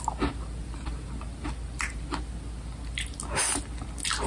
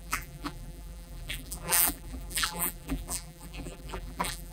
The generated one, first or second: second